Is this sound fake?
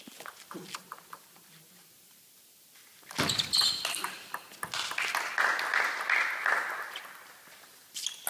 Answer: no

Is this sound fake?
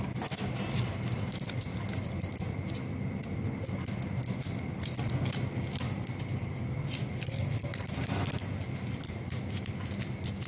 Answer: no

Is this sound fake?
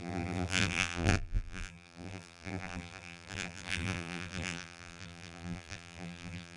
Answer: yes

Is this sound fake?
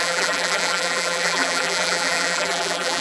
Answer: yes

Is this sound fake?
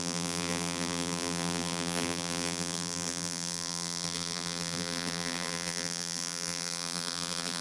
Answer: yes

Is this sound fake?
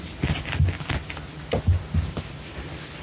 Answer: no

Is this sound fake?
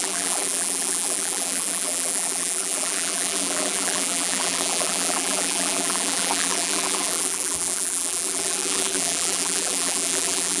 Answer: yes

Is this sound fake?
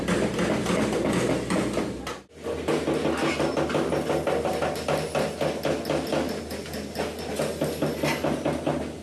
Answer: no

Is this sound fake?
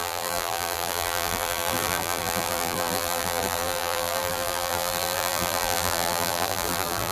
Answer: yes